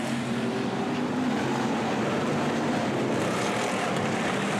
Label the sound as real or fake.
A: real